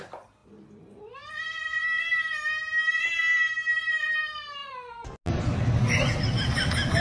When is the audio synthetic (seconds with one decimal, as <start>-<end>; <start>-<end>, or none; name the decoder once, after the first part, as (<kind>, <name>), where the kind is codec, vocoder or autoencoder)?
none